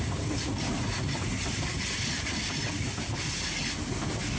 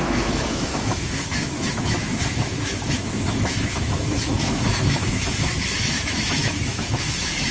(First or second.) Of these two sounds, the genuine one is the first